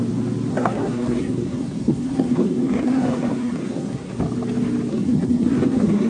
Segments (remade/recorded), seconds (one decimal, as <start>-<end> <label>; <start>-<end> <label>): 0.0-0.5 recorded; 0.5-4.2 remade; 4.2-4.9 recorded; 4.9-6.1 remade